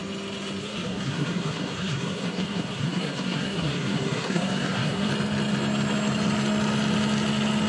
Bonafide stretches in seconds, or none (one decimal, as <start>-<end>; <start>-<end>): 0.0-0.6; 5.1-7.7